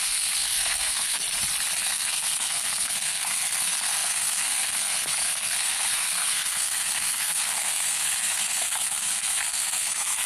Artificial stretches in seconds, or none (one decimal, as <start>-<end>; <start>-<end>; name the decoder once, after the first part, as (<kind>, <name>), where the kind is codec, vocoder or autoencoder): 0.0-1.2 (codec, SNAC); 1.8-10.3